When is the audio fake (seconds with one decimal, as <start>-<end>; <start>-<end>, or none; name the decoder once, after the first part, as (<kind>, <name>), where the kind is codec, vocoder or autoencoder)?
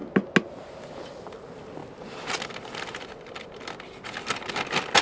none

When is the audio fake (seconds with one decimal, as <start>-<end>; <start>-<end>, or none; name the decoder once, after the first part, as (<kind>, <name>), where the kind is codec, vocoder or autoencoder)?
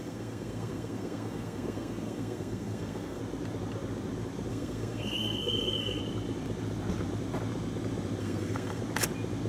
0.0-3.2 (codec, SNAC); 4.5-6.0; 8.2-8.8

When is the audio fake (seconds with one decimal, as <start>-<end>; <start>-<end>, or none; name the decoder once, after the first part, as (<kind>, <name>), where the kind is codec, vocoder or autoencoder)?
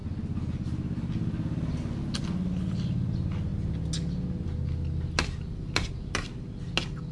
none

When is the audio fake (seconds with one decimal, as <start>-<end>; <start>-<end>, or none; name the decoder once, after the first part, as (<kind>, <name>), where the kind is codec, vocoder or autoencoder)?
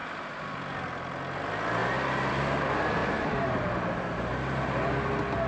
0.0-0.5 (vocoder, BigVGAN v2); 1.8-2.3; 3.0-5.1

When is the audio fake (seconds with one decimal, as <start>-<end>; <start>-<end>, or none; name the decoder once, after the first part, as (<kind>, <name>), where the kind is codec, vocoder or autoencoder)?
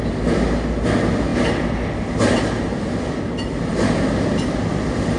none